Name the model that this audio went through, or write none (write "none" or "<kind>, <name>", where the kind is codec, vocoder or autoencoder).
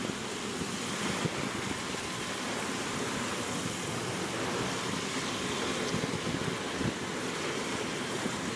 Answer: none